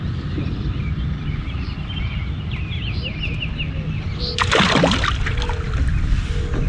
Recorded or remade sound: recorded